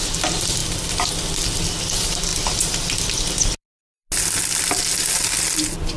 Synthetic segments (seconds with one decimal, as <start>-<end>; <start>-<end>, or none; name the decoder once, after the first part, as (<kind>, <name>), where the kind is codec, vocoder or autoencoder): none